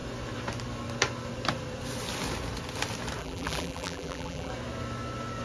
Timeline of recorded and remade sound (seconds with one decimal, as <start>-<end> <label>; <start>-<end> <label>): 0.0-3.2 recorded; 3.2-4.5 remade; 4.5-5.4 recorded